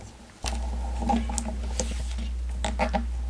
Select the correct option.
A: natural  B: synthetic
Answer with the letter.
A